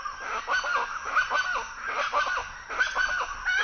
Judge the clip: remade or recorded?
recorded